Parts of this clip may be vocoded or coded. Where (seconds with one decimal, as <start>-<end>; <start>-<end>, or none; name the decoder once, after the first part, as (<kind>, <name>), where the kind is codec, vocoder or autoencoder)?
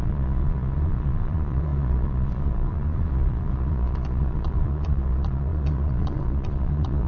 0.0-7.1 (vocoder, Vocos)